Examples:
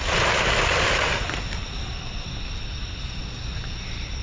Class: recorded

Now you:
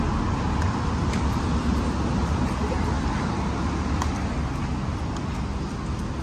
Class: recorded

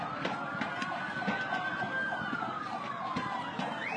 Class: recorded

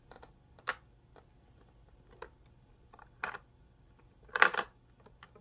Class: recorded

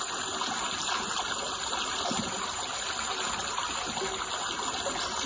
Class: recorded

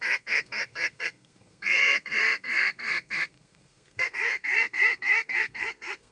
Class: remade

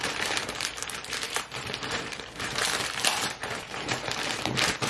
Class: remade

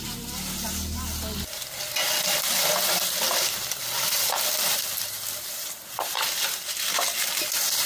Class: recorded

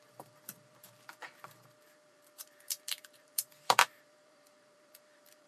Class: remade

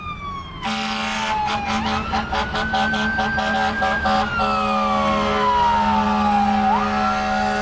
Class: recorded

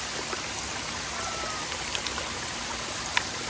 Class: recorded